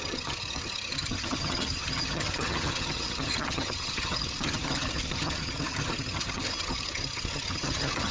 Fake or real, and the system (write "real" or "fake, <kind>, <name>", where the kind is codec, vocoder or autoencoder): fake, vocoder, HiFi-GAN